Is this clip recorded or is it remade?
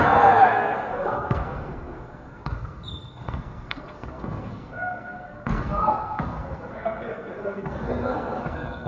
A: remade